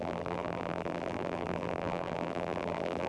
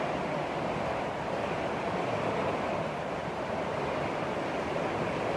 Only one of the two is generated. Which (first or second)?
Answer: first